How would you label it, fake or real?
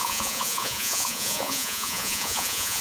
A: fake